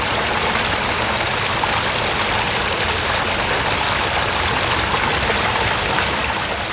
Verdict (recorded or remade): recorded